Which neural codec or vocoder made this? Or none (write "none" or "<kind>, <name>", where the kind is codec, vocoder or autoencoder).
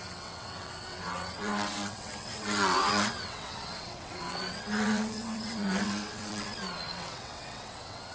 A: vocoder, WaveNeXt